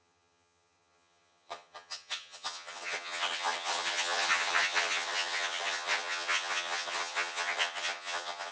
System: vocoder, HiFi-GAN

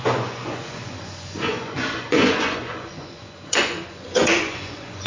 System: vocoder, Vocos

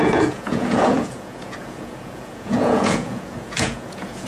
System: vocoder, Vocos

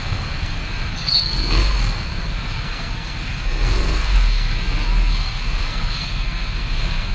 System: codec, SNAC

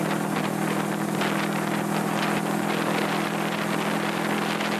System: none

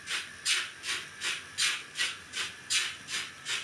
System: none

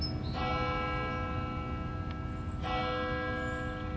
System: none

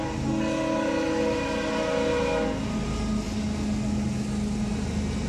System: none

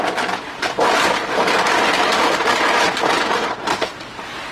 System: none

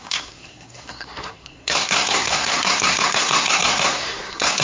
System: codec, SNAC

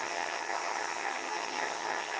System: vocoder, HiFi-GAN